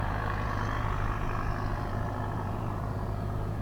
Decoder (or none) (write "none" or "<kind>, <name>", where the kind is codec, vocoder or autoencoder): vocoder, Vocos